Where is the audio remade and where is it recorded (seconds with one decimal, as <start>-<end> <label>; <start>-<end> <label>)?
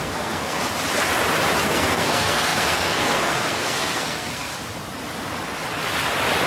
0.0-0.6 remade; 0.6-1.6 recorded; 1.6-4.5 remade; 4.5-6.5 recorded